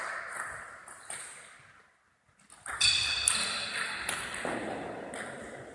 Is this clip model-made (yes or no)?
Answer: no